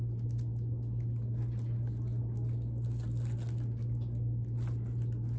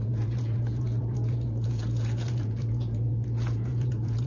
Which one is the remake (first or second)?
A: second